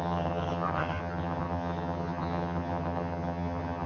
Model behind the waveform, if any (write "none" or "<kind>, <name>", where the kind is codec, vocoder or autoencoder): vocoder, HiFi-GAN